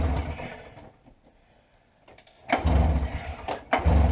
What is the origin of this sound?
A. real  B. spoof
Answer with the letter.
A